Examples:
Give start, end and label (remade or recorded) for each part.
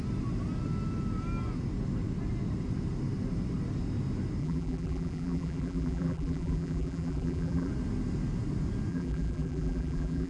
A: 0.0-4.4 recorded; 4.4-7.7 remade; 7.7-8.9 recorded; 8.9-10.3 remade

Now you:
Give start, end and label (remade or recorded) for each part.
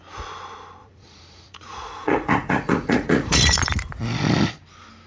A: 0.0-0.8 recorded; 0.8-3.6 remade; 3.6-5.1 recorded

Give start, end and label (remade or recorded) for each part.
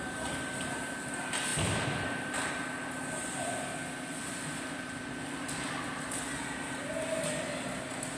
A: 0.0-8.2 recorded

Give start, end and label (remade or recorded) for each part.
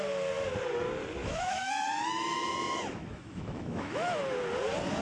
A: 0.0-1.2 recorded; 1.2-4.2 remade; 4.2-5.0 recorded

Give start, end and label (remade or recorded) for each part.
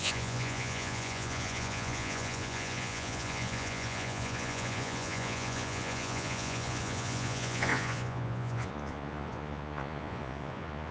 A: 0.0-10.9 remade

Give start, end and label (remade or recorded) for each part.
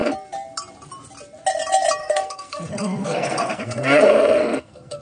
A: 0.0-2.0 recorded; 2.0-5.0 remade